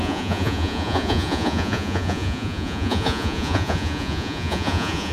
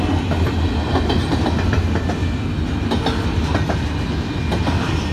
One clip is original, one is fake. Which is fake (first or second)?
first